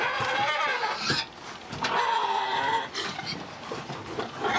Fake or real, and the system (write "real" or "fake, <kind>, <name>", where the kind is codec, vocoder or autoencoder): real